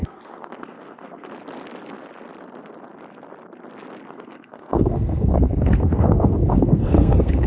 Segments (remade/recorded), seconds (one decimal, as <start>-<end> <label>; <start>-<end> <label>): 0.0-1.3 remade; 1.3-4.1 recorded; 4.1-7.5 remade